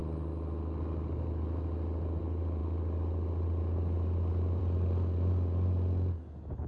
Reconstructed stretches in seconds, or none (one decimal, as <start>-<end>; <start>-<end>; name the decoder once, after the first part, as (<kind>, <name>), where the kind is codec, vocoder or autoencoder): none